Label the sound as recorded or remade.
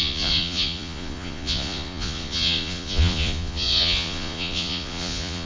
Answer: remade